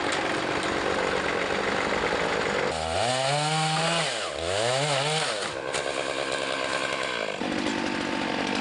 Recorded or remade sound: recorded